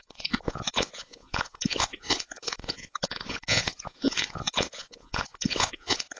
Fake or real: fake